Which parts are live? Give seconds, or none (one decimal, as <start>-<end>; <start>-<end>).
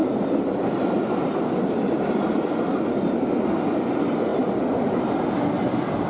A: 0.0-6.1